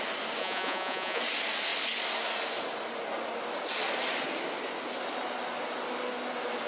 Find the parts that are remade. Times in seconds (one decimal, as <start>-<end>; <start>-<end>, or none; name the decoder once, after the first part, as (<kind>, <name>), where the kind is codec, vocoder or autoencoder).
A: 0.4-1.2 (vocoder, Vocos)